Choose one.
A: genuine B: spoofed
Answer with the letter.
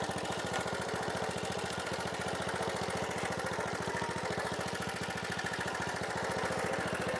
A